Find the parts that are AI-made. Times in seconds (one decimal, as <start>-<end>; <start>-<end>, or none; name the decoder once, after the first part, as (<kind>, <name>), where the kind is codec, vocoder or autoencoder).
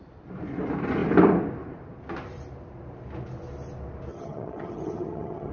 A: 4.1-5.5 (vocoder, HiFi-GAN)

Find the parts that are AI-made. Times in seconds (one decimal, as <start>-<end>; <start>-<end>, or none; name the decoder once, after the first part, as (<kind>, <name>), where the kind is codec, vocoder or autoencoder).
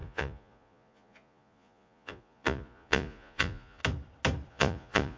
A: 0.0-3.8 (vocoder, Vocos); 4.5-5.2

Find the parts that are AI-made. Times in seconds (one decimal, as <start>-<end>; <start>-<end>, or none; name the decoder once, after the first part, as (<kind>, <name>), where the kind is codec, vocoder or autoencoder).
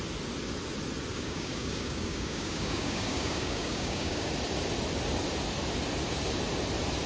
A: 1.1-4.3 (codec, DAC)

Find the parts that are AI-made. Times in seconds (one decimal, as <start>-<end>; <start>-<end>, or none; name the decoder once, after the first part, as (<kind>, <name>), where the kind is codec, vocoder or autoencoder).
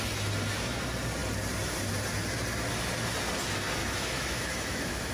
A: 3.8-5.1 (autoencoder, DAC-VAE)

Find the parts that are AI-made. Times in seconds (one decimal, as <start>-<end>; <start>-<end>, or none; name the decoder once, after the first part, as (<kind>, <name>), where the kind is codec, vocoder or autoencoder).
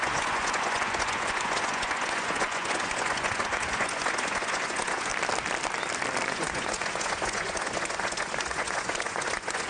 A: 0.0-5.1 (vocoder, Vocos); 6.3-9.7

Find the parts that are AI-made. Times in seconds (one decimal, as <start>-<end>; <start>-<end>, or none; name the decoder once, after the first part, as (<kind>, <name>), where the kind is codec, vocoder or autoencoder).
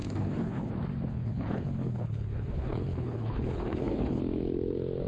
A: 0.0-0.7 (codec, HILCodec); 1.1-4.2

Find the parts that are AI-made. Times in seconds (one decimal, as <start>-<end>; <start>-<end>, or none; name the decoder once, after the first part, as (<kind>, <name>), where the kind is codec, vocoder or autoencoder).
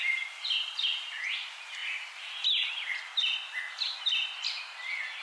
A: none